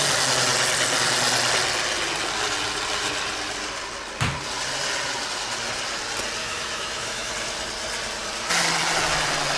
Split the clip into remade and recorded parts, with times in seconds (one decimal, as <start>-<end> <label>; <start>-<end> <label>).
0.0-6.4 recorded; 6.4-7.3 remade; 7.3-9.6 recorded